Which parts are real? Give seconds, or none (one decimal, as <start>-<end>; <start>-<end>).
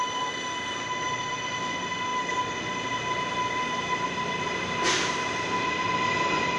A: 0.0-6.6